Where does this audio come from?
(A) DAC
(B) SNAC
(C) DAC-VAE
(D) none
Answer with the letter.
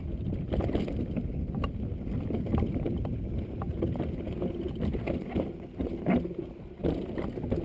D